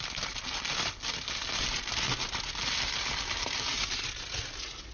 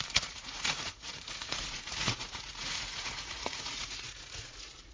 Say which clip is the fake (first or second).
second